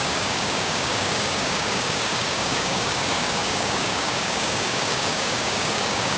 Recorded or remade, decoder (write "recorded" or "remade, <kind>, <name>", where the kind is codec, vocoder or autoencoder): remade, codec, DAC